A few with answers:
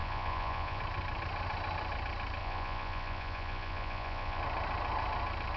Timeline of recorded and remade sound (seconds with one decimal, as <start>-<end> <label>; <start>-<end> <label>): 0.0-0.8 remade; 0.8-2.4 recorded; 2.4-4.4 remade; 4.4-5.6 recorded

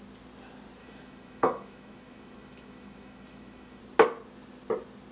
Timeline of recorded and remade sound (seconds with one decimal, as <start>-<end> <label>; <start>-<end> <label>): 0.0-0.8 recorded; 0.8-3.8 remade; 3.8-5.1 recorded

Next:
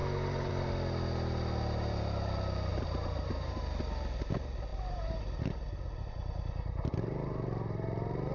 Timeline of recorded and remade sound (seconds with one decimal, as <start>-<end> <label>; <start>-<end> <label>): 0.0-0.5 remade; 0.5-2.7 recorded; 2.7-3.6 remade; 3.6-4.7 recorded; 4.7-8.3 remade

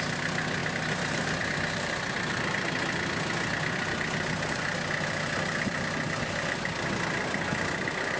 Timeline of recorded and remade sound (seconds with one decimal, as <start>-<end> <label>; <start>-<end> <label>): 0.0-8.2 recorded